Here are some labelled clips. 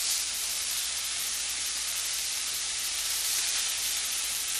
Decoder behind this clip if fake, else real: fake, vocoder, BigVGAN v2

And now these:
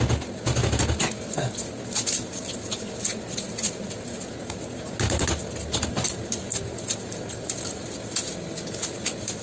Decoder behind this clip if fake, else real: real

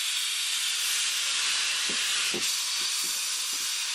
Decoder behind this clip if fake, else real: real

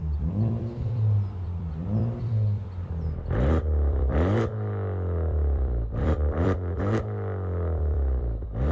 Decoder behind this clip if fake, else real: fake, vocoder, BigVGAN v2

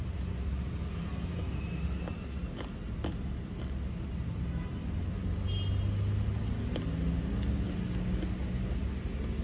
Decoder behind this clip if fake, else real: real